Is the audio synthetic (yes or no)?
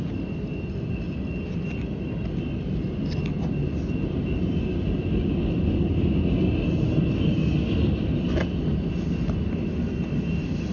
no